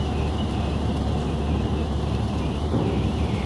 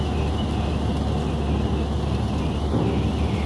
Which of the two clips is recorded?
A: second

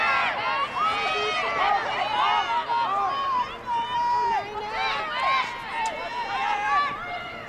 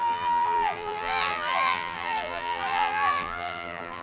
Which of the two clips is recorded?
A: first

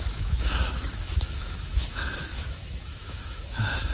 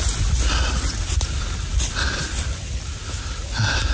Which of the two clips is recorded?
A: second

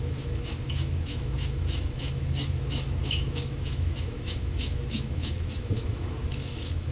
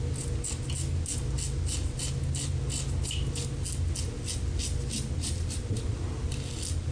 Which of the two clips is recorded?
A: second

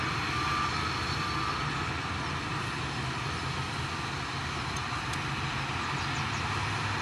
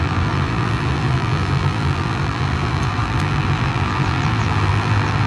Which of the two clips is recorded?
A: first